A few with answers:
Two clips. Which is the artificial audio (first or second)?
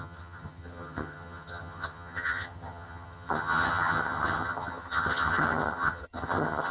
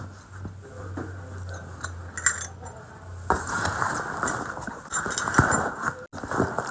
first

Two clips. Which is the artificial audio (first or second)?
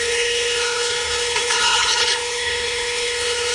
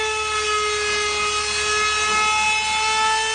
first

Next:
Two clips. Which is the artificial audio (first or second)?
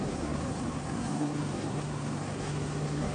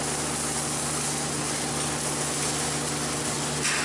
first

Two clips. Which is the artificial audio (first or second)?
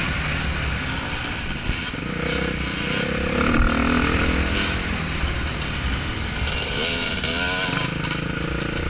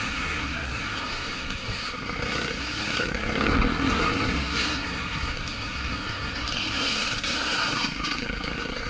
second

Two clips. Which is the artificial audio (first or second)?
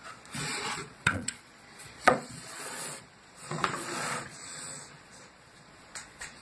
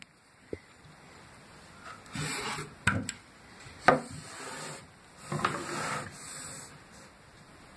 first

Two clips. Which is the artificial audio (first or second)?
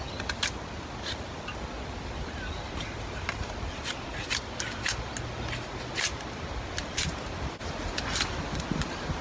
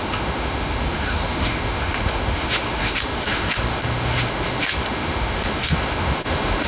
second